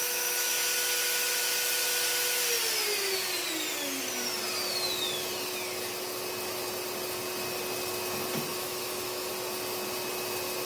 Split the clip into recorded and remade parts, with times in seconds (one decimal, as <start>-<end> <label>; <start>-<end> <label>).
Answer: 0.0-0.5 remade; 0.5-8.5 recorded; 8.5-9.3 remade; 9.3-10.6 recorded